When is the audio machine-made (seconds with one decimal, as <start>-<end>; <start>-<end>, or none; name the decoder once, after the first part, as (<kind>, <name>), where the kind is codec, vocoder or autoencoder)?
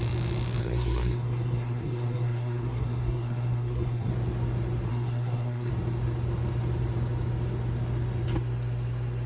0.6-4.1 (codec, SNAC); 4.9-5.7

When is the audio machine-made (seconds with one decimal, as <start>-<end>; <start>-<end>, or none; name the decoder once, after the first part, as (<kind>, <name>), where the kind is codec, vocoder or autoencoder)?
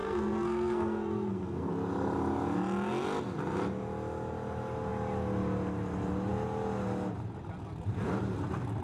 0.0-1.7 (codec, SNAC)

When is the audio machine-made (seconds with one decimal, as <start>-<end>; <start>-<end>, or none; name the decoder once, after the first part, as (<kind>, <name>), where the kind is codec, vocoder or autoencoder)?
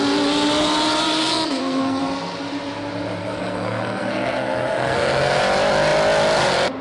1.2-2.0 (codec, SNAC); 3.2-5.4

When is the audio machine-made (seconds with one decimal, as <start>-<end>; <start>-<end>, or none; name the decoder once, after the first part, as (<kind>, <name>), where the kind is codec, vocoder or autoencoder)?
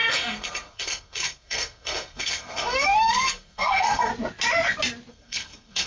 0.0-4.1 (codec, SNAC); 5.1-5.9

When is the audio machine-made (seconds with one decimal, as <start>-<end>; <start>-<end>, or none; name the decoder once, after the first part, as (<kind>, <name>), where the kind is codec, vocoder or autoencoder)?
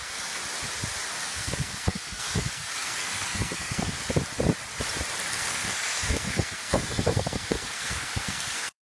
0.0-0.4 (codec, SNAC); 1.2-4.0; 5.3-8.8